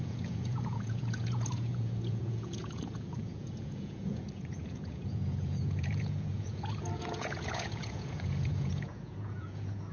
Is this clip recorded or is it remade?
remade